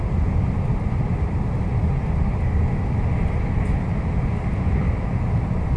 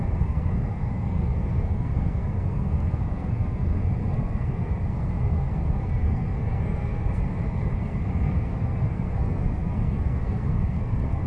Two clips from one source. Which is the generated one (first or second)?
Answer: second